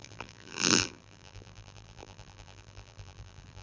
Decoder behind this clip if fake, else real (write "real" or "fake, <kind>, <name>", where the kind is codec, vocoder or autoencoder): fake, vocoder, BigVGAN v2